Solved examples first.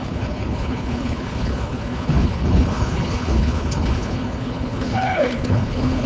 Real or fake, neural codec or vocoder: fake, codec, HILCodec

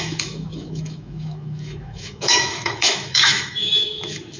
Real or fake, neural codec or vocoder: fake, autoencoder, DAC-VAE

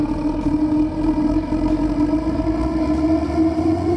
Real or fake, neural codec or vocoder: real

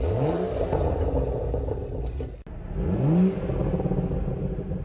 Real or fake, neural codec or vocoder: real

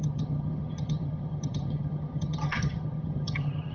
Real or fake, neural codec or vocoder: fake, vocoder, HiFi-GAN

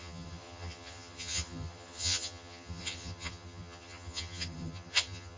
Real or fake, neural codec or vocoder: fake, vocoder, HiFi-GAN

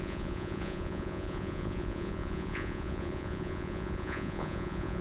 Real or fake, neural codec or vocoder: fake, vocoder, Vocos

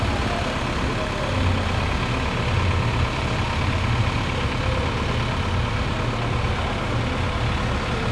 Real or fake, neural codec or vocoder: real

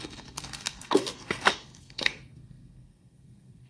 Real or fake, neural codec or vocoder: fake, codec, SNAC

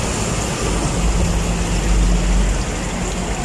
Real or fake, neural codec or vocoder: real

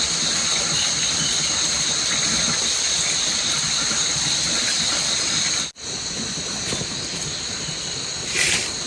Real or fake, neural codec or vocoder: real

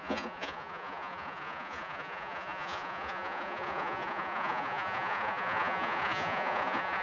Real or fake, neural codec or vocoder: fake, vocoder, Vocos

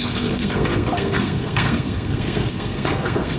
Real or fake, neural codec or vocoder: fake, codec, SNAC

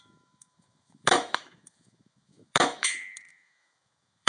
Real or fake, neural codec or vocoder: fake, autoencoder, DAC-VAE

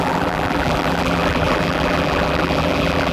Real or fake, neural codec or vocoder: fake, vocoder, BigVGAN v2